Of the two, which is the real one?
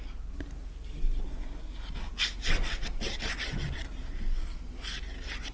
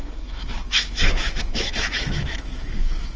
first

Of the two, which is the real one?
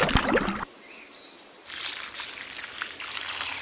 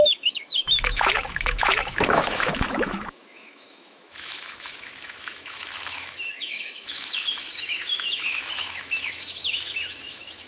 first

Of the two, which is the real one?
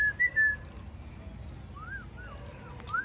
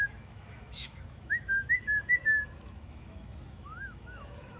first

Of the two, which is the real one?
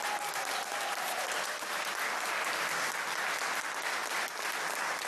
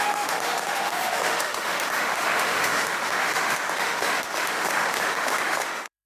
first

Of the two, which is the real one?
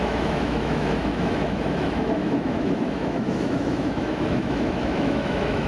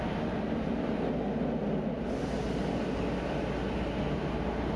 second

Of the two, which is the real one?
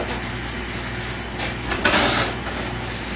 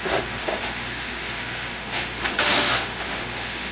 first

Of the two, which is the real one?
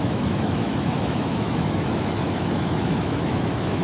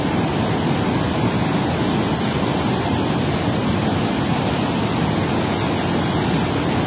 second